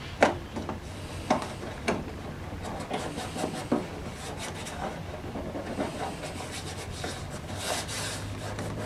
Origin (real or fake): real